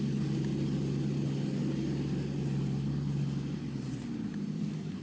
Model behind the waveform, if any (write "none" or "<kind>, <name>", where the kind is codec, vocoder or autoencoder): none